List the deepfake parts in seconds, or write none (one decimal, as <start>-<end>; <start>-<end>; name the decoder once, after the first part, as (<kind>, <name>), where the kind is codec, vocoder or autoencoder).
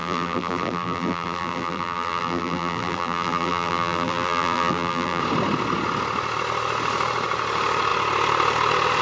0.0-5.2 (vocoder, BigVGAN v2)